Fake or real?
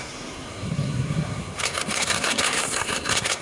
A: fake